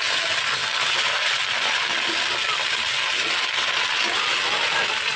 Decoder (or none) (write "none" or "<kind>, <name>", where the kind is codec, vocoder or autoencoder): none